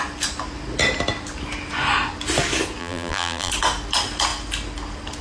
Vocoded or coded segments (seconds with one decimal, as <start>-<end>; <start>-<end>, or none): 2.8-3.5